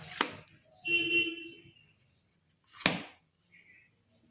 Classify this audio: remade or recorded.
recorded